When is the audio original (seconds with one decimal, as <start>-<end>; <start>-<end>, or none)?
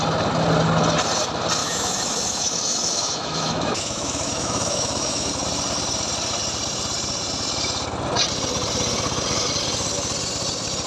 0.0-1.6; 5.3-10.9